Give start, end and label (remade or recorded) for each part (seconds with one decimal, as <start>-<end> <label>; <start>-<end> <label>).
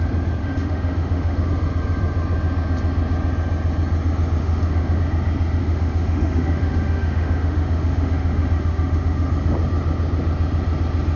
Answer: 0.0-0.4 recorded; 0.4-1.5 remade; 1.5-4.4 recorded; 4.4-5.0 remade; 5.0-5.6 recorded; 5.6-9.3 remade; 9.3-11.2 recorded